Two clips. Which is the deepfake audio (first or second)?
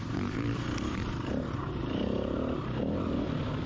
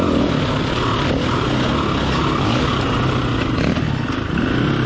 first